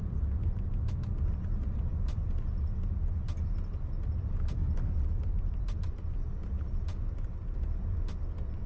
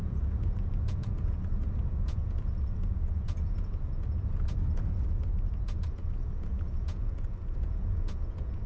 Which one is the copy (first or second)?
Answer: second